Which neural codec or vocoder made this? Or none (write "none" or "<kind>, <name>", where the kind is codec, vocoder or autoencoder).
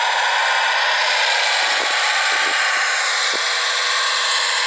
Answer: vocoder, BigVGAN v2